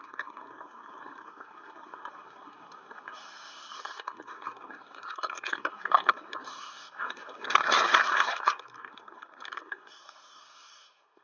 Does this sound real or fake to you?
fake